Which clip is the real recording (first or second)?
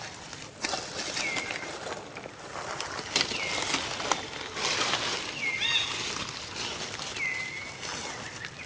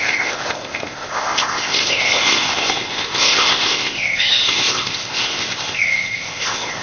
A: first